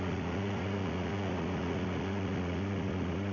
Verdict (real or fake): fake